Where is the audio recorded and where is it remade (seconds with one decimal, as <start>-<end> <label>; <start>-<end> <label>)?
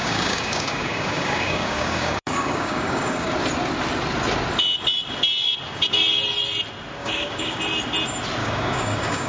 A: 0.0-3.3 remade; 3.3-7.0 recorded; 7.0-7.6 remade; 7.6-8.4 recorded; 8.4-9.3 remade